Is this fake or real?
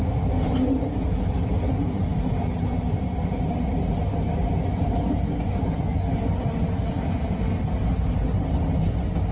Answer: real